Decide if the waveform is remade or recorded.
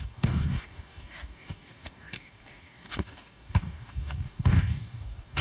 remade